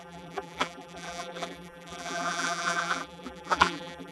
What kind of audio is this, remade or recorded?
remade